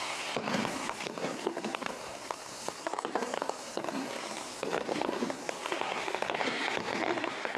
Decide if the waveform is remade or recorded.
remade